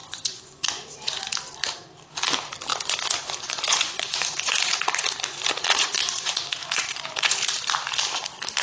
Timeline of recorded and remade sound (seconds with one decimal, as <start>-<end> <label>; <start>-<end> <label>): 0.0-1.3 remade; 1.3-2.7 recorded; 2.7-4.6 remade; 4.6-5.7 recorded; 5.7-7.4 remade; 7.4-8.6 recorded

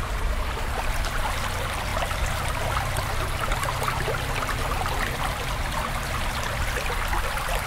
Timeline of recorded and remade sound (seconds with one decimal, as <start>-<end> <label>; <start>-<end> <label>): 0.0-7.7 recorded

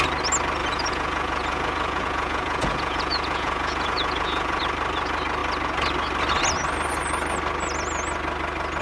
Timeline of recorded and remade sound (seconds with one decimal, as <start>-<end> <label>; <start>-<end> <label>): 0.0-0.6 recorded; 0.6-4.6 remade; 4.6-8.8 recorded

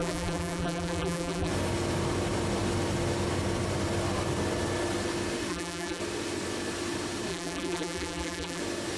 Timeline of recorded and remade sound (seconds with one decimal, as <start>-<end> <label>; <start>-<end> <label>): 0.0-1.5 remade; 1.5-5.5 recorded; 5.5-6.0 remade; 6.0-7.3 recorded; 7.3-8.6 remade; 8.6-9.0 recorded

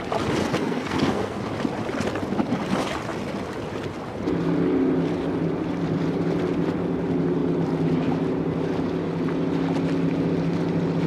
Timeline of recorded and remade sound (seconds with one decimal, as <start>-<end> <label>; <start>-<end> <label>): 0.0-0.4 recorded; 0.4-1.4 remade; 1.4-11.1 recorded

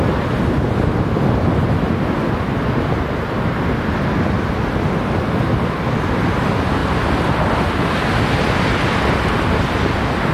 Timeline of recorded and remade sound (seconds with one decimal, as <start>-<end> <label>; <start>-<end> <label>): 0.0-10.3 recorded

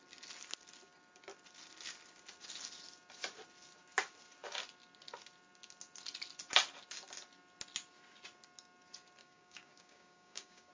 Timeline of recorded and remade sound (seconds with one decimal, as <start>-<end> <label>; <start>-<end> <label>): 0.0-9.2 recorded; 9.2-10.7 remade